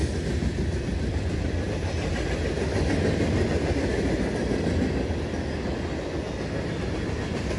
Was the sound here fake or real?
real